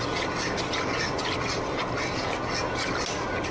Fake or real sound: real